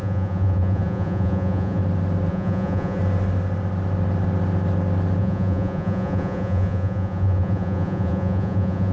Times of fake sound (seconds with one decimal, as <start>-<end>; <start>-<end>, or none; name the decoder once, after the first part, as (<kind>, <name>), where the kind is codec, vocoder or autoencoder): 0.0-1.8 (vocoder, Vocos); 2.3-3.0; 5.2-8.9